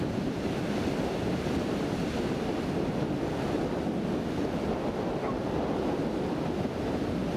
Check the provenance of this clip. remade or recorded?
recorded